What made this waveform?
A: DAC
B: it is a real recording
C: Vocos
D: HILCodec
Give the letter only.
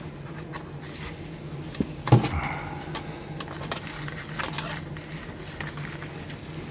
B